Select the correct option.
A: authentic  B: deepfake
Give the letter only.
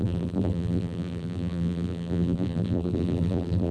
B